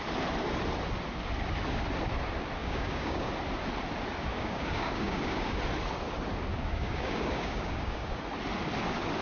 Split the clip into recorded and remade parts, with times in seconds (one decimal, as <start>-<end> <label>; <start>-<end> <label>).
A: 0.0-2.6 recorded; 2.6-3.3 remade; 3.3-4.3 recorded; 4.3-5.6 remade; 5.6-6.5 recorded; 6.5-8.2 remade; 8.2-9.2 recorded